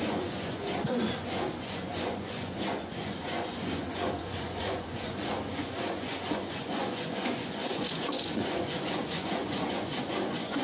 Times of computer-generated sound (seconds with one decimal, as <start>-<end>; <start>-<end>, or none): 0.0-10.6

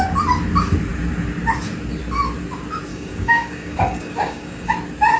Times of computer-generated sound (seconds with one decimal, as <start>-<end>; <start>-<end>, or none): 2.9-4.7

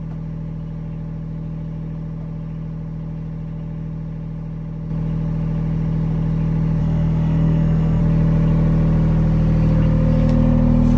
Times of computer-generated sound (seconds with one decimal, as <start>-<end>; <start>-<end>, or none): 6.8-8.0